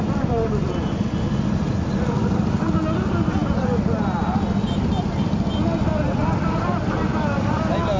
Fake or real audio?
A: real